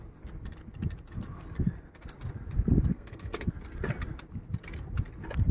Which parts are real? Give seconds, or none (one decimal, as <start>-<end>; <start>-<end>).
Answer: 0.0-2.9; 3.5-5.5